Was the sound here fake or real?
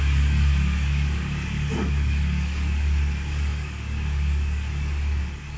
fake